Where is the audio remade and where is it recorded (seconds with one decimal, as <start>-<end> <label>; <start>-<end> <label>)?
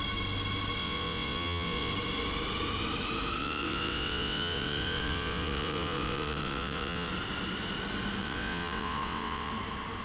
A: 0.0-0.8 recorded; 0.8-1.9 remade; 1.9-3.4 recorded; 3.4-7.1 remade; 7.1-8.2 recorded; 8.2-9.5 remade; 9.5-10.0 recorded